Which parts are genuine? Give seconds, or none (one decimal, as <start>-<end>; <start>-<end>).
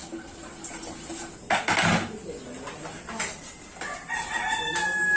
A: 0.0-5.2